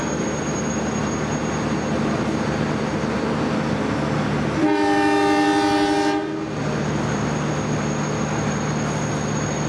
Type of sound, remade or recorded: recorded